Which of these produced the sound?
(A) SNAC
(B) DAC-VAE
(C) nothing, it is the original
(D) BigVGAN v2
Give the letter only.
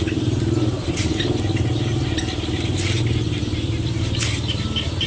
C